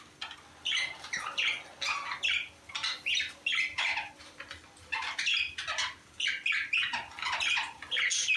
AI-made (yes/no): no